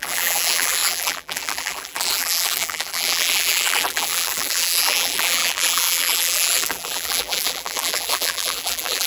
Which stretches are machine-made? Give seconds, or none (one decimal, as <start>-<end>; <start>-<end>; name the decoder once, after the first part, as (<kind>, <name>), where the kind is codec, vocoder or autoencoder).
0.0-9.1 (vocoder, BigVGAN v2)